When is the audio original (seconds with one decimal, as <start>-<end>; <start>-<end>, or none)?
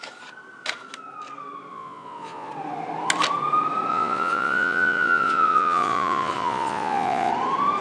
0.0-1.7; 2.5-3.9; 7.3-7.8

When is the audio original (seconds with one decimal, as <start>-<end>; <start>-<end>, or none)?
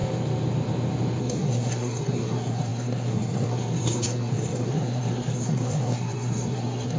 0.0-1.2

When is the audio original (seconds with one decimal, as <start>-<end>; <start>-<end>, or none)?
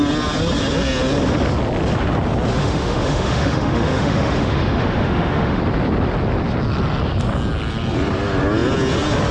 0.0-2.6; 5.6-9.3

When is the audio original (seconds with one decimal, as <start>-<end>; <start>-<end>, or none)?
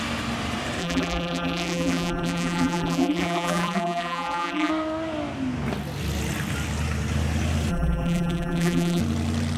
0.0-0.8; 4.7-7.7; 9.0-9.6